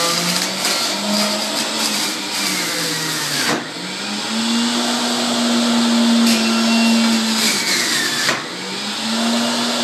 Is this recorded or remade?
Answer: recorded